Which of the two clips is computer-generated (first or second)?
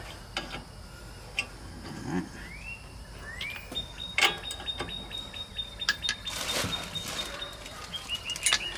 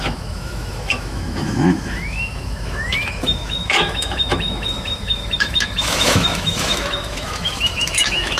second